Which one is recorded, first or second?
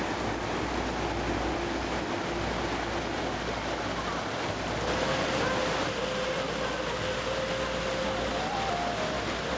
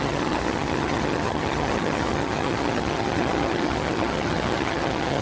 first